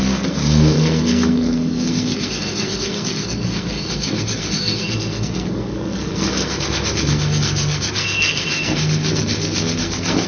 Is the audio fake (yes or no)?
yes